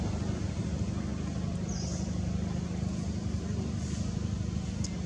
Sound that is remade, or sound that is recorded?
recorded